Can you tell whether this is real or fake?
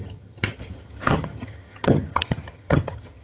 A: fake